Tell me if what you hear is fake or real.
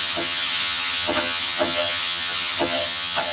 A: fake